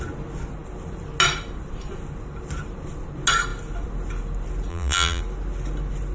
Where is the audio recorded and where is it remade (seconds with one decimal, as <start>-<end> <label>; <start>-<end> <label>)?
0.0-4.7 recorded; 4.7-5.2 remade; 5.2-6.1 recorded